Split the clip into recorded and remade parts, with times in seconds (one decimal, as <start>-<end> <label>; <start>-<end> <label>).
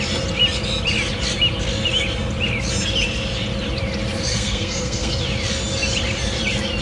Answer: 0.0-4.3 recorded; 4.3-5.2 remade; 5.2-6.8 recorded